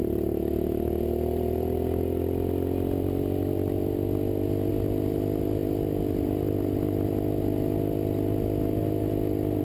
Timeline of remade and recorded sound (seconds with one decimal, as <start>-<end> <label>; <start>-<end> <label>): 0.0-9.6 recorded